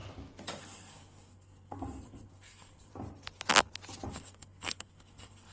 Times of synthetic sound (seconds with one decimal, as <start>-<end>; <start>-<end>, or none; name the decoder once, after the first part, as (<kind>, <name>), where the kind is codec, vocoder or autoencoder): 0.6-2.9 (codec, SNAC); 4.1-5.5

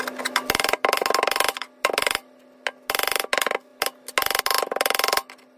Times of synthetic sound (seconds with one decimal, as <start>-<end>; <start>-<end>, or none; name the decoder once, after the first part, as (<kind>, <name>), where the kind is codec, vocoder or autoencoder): none

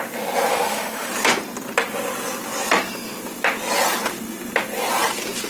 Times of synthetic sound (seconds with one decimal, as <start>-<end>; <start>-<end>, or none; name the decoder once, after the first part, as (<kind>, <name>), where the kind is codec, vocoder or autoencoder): 0.5-1.1 (autoencoder, DAC-VAE)

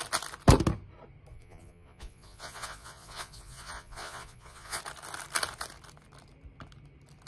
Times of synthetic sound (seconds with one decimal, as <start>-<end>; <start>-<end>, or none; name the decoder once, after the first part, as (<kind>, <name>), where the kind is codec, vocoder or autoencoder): 1.3-4.8 (vocoder, Vocos)

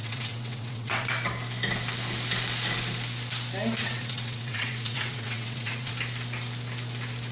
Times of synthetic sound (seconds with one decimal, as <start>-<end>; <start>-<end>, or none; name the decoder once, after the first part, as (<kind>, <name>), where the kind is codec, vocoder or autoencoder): 0.0-1.1 (vocoder, WaveNeXt); 3.8-5.9

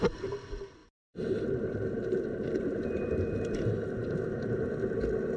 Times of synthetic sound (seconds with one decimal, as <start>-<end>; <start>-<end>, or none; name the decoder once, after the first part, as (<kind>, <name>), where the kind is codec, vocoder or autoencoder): none

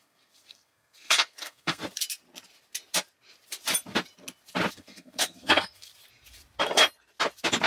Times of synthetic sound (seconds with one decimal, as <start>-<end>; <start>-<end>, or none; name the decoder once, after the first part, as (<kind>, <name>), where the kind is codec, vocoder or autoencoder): 0.0-1.8 (codec, SNAC); 4.7-5.9